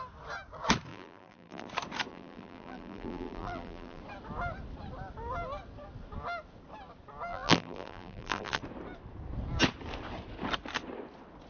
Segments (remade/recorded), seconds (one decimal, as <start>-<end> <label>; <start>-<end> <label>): 0.0-0.9 recorded; 0.9-1.7 remade; 1.7-2.1 recorded; 2.1-4.0 remade; 4.0-7.3 recorded; 7.3-8.6 remade; 8.6-11.5 recorded

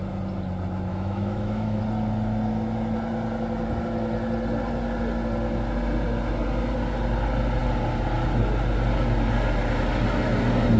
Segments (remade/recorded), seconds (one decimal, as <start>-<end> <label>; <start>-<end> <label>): 0.0-0.9 recorded; 0.9-1.8 remade; 1.8-10.8 recorded